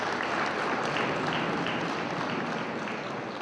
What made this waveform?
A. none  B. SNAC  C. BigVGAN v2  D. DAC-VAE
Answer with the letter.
A